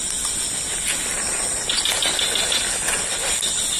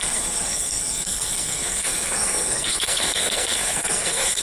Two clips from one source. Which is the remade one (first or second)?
second